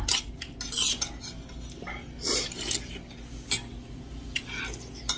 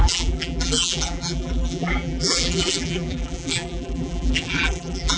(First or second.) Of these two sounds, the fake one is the second